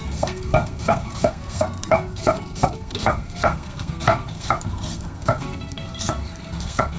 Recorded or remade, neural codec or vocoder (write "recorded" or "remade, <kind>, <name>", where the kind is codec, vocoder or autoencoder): remade, codec, SNAC